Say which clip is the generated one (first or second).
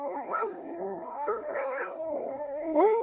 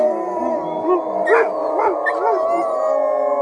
first